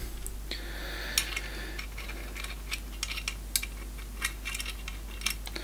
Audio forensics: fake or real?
real